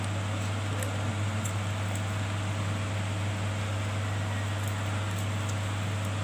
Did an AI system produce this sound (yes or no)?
no